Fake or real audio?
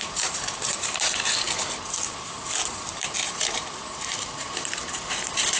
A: fake